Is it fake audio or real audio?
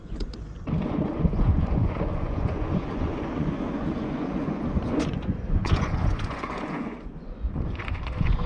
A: fake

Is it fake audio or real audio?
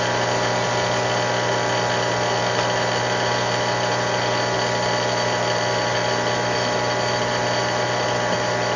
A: real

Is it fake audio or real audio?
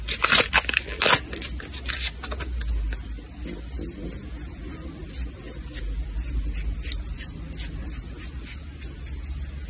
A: real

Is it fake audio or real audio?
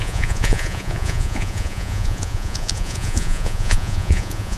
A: fake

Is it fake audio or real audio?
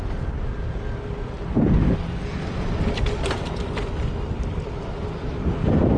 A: real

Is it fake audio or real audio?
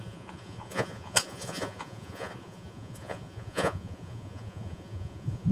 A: fake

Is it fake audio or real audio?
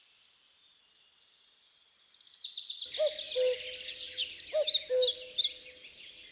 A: real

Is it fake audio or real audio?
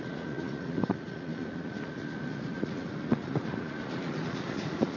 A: fake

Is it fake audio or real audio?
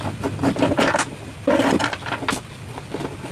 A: real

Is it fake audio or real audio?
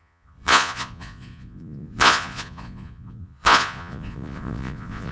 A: fake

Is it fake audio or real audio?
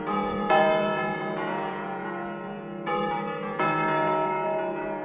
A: fake